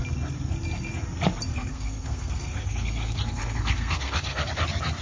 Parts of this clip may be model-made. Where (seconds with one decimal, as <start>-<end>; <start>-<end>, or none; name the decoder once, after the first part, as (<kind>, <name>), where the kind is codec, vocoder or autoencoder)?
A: 1.5-4.5 (codec, SNAC)